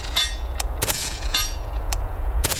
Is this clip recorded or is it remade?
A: remade